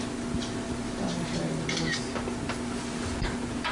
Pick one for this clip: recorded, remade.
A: recorded